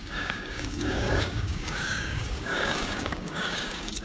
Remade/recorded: remade